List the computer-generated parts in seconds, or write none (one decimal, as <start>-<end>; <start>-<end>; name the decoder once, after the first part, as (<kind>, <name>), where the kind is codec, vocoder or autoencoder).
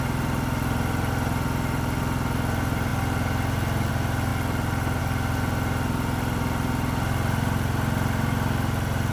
none